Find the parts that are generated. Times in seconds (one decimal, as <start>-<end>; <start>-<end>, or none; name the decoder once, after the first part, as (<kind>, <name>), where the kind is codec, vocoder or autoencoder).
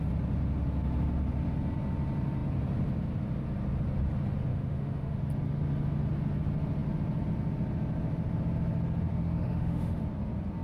4.5-5.2 (autoencoder, DAC-VAE); 9.1-10.0